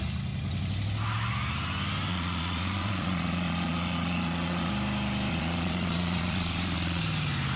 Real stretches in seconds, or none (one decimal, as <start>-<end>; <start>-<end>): 0.0-2.1; 4.7-5.3; 7.0-7.6